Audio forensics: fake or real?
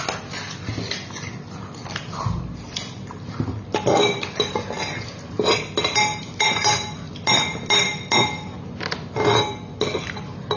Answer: real